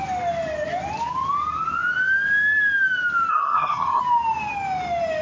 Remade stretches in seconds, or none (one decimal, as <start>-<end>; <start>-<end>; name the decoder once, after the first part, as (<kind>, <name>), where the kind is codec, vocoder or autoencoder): 3.3-4.0 (codec, SNAC)